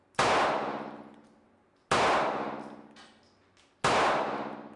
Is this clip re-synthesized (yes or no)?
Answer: no